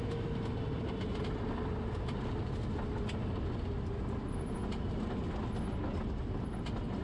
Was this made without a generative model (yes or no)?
yes